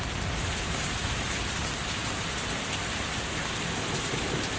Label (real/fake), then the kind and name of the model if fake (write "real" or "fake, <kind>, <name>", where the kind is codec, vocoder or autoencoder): real